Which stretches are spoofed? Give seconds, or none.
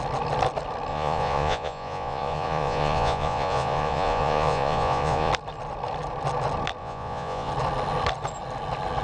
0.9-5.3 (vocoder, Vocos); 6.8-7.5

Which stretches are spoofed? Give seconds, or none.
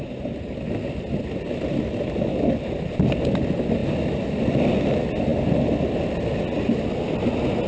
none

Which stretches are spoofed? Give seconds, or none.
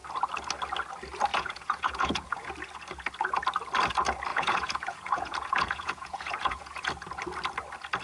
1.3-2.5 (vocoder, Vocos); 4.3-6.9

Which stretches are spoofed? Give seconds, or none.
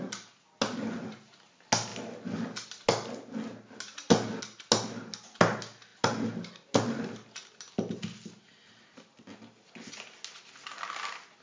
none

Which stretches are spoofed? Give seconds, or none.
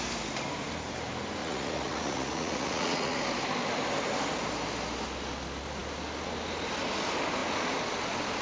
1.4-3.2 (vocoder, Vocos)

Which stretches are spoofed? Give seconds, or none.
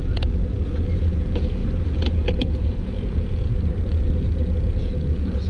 0.0-1.6 (vocoder, Vocos); 2.4-3.5; 4.4-5.5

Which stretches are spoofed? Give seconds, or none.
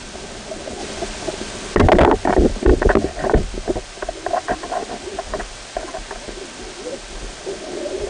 none